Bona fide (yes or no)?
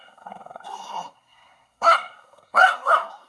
no